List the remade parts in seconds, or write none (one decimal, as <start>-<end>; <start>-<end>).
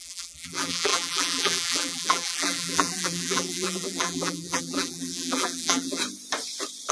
0.0-6.0